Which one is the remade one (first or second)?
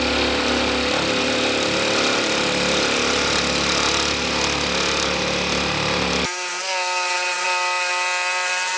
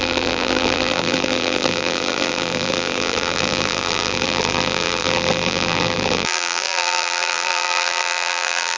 second